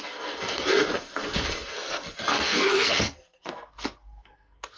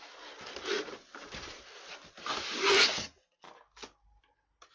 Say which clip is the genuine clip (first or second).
second